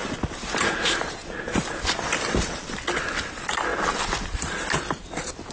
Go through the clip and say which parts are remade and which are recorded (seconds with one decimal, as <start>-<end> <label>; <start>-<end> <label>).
0.0-5.5 recorded